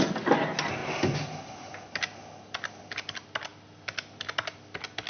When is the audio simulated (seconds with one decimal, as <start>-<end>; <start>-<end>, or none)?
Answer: none